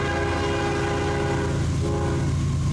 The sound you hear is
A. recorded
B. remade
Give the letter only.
A